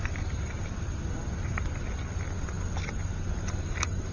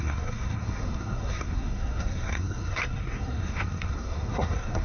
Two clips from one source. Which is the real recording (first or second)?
first